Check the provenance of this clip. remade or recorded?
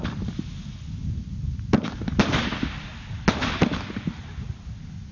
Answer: recorded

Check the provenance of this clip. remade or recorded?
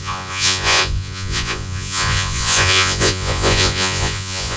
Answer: remade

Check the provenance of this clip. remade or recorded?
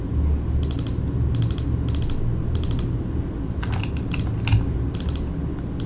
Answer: recorded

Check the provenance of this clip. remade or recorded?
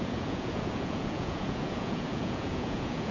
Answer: remade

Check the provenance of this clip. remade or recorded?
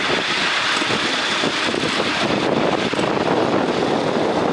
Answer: recorded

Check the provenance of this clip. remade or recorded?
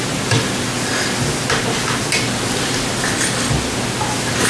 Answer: recorded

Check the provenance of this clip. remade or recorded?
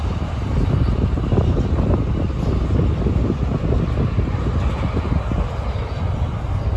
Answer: recorded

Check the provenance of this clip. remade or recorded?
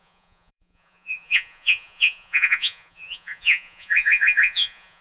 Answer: remade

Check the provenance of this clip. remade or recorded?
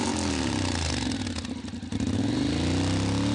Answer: recorded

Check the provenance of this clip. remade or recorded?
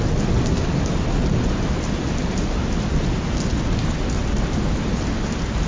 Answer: recorded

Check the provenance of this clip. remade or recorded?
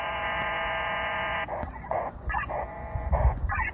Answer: remade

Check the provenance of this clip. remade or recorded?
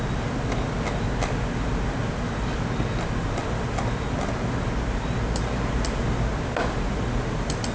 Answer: recorded